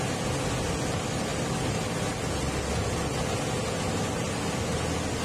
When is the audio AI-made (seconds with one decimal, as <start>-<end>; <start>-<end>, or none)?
none